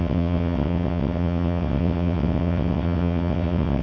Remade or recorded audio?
remade